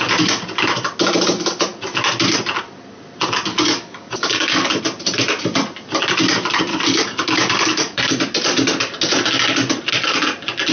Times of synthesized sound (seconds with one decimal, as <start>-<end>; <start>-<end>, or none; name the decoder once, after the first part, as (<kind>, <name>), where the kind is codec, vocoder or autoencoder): 3.5-4.8 (codec, DAC); 6.7-8.1